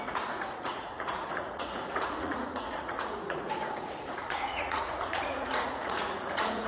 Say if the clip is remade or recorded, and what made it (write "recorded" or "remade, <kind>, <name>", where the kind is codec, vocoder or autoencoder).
remade, vocoder, Vocos